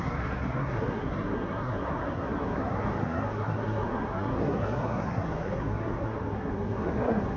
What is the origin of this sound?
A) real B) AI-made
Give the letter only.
B